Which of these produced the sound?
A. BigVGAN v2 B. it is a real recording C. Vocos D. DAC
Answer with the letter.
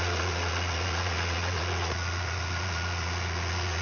C